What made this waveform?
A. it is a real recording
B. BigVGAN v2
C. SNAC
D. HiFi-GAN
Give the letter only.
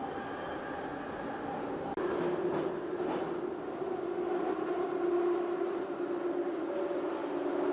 A